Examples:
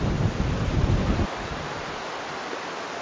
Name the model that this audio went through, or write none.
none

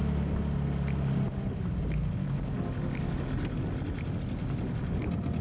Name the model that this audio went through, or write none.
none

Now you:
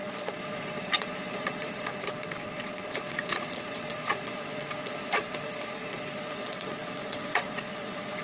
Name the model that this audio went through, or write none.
vocoder, Vocos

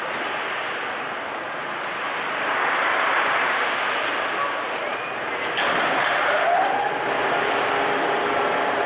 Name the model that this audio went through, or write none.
none